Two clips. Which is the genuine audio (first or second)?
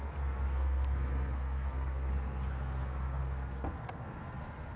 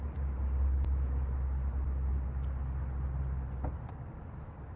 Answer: second